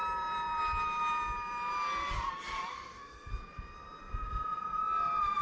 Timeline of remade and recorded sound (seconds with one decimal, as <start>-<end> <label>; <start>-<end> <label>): 0.0-2.7 recorded; 2.7-3.3 remade; 3.3-5.4 recorded